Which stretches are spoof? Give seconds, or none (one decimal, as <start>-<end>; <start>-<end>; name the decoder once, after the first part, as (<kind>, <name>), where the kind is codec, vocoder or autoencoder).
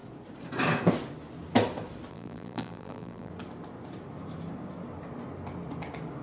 2.1-3.3 (vocoder, BigVGAN v2)